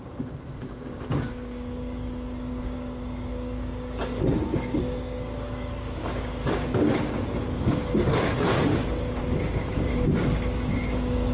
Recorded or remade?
remade